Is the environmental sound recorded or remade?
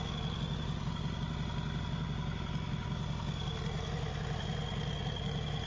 recorded